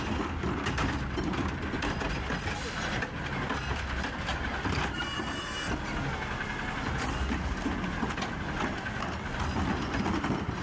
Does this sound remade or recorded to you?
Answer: recorded